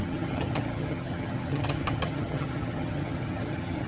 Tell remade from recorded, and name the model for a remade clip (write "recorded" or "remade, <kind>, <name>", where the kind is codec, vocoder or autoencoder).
remade, vocoder, HiFi-GAN